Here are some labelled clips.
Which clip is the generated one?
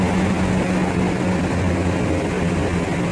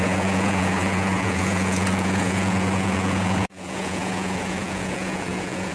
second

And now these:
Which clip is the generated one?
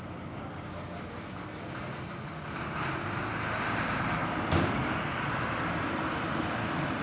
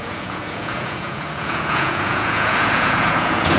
second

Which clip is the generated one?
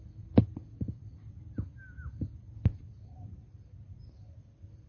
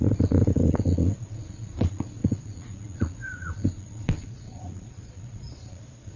second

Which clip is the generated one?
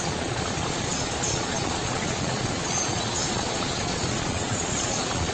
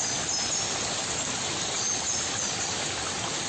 first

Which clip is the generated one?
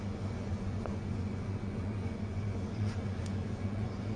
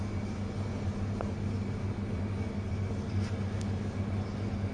first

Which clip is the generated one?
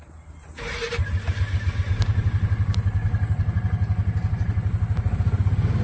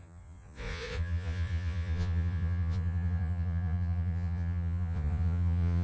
second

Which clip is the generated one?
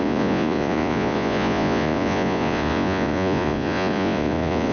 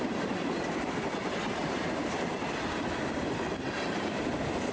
first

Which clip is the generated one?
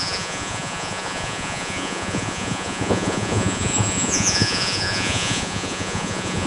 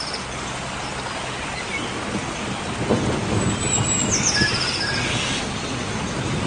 first